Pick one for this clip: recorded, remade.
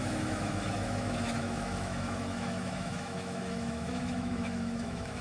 remade